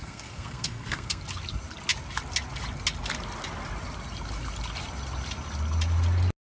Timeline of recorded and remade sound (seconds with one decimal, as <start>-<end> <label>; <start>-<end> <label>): 0.0-1.2 remade; 1.2-6.4 recorded